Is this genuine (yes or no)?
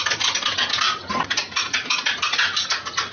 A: yes